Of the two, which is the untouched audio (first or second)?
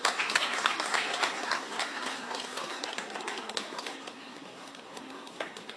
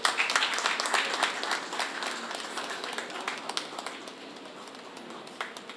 second